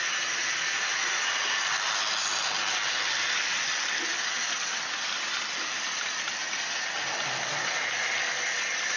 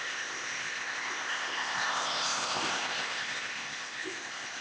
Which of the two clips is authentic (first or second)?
first